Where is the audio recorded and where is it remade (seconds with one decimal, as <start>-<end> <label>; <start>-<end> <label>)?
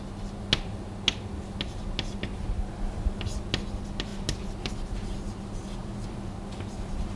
0.0-7.2 recorded